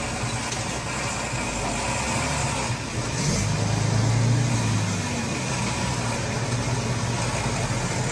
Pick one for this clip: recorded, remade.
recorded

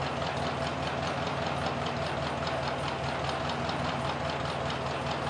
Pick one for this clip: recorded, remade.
recorded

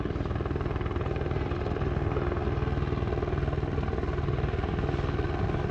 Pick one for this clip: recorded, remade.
recorded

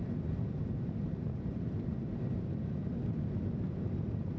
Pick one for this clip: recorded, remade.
remade